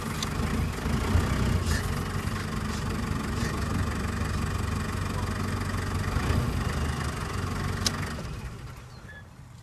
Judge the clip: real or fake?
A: real